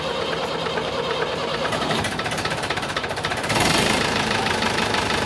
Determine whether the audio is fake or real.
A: fake